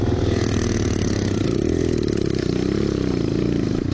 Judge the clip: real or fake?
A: real